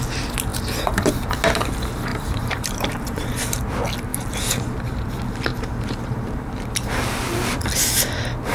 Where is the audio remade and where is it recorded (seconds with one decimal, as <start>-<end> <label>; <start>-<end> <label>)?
0.0-0.5 recorded; 0.5-1.1 remade; 1.1-2.1 recorded; 2.1-3.6 remade; 3.6-4.1 recorded; 4.1-4.8 remade; 4.8-5.5 recorded; 5.5-6.9 remade; 6.9-8.5 recorded